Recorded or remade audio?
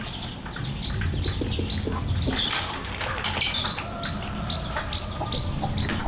recorded